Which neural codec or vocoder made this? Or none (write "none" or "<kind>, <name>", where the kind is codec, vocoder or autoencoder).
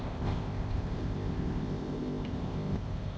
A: codec, ZipCodec